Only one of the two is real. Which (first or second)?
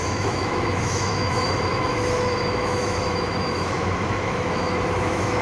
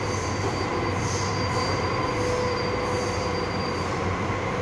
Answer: second